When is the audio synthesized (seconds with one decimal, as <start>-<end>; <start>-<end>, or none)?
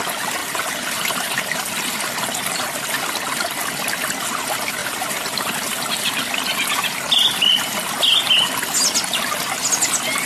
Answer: 0.4-1.5; 4.8-5.8